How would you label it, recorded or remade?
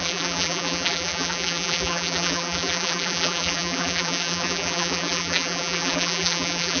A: remade